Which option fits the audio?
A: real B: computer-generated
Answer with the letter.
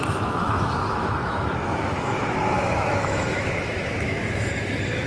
B